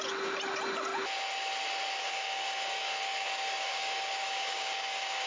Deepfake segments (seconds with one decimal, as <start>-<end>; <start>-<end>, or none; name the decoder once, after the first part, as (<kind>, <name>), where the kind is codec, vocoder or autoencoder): 2.0-5.3 (codec, DAC)